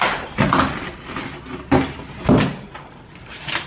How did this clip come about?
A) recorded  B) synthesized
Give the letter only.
A